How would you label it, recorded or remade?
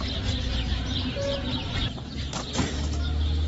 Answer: recorded